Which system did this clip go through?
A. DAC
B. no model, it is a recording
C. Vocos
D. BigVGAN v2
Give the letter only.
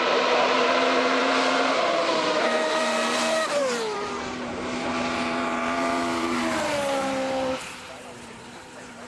D